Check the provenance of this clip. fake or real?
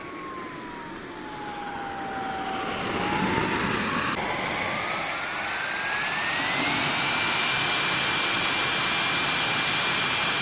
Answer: real